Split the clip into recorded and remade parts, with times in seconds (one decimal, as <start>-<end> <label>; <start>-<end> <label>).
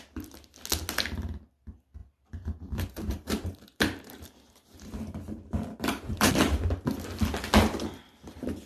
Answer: 0.0-2.0 recorded; 2.0-6.3 remade; 6.3-8.7 recorded